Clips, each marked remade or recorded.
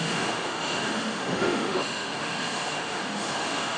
remade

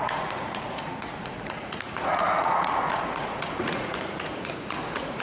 remade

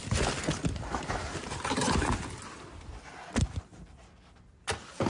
recorded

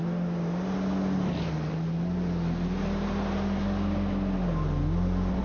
recorded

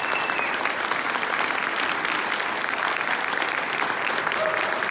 recorded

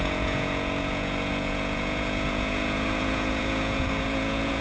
remade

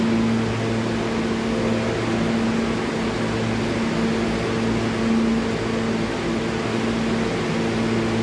recorded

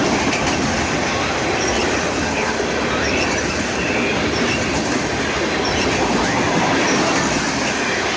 recorded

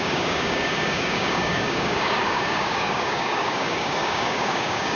remade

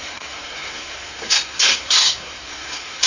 remade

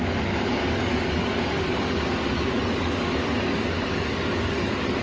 remade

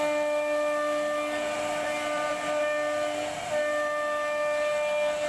recorded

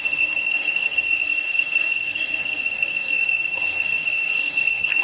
remade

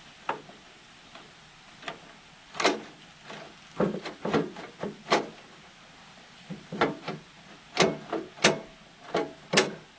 recorded